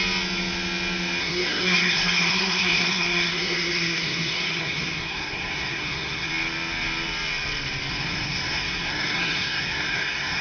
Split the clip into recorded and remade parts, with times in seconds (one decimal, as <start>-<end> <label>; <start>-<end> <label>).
0.0-1.2 recorded; 1.2-6.3 remade; 6.3-7.9 recorded; 7.9-10.4 remade